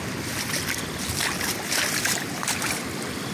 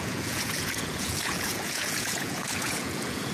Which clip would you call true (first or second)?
first